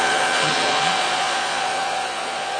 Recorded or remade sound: remade